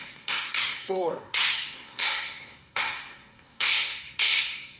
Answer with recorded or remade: remade